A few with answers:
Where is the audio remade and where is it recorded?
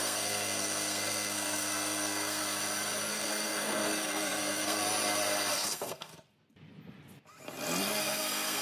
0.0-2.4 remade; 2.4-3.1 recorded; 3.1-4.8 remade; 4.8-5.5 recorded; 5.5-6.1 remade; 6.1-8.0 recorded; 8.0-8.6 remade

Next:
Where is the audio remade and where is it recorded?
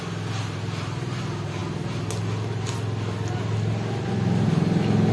0.0-5.1 recorded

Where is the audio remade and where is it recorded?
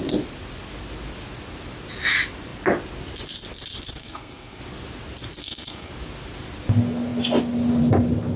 0.0-4.0 recorded; 4.0-4.6 remade; 4.6-5.4 recorded; 5.4-5.9 remade; 5.9-8.4 recorded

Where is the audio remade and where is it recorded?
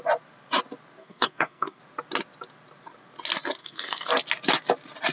0.0-1.0 recorded; 1.0-1.8 remade; 1.8-3.6 recorded; 3.6-4.1 remade; 4.1-5.1 recorded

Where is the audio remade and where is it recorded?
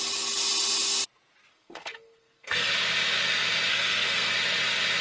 0.0-1.5 recorded; 1.5-2.7 remade; 2.7-3.7 recorded; 3.7-4.3 remade; 4.3-5.0 recorded